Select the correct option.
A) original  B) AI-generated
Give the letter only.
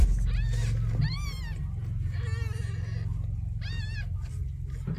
A